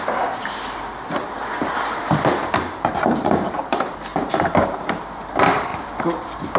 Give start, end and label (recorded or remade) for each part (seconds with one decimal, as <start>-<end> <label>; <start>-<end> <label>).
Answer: 0.0-4.1 remade; 4.1-4.6 recorded; 4.6-6.6 remade